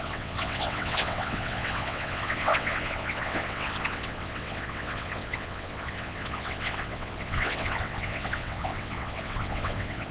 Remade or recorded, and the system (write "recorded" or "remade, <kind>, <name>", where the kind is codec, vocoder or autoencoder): remade, vocoder, WaveNeXt